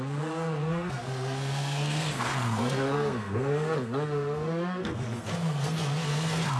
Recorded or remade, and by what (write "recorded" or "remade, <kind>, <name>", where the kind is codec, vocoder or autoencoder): remade, codec, SNAC